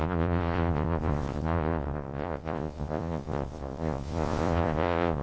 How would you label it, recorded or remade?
remade